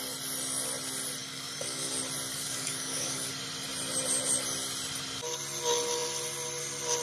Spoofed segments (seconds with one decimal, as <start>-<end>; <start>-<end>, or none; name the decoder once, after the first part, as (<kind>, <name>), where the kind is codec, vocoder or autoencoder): 1.2-1.9 (codec, DAC); 2.3-3.3